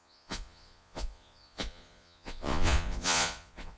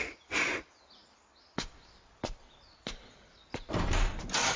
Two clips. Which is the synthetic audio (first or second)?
first